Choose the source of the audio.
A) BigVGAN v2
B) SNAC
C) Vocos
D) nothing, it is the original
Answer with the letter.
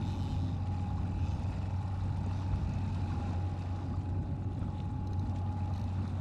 D